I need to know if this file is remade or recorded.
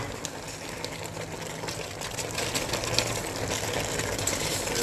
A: recorded